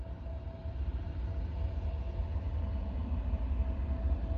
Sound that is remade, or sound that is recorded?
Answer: recorded